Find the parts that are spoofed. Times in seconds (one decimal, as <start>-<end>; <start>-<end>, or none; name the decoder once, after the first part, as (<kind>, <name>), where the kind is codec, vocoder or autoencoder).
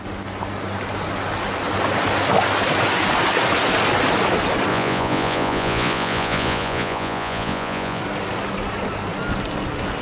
4.7-8.0 (vocoder, Vocos)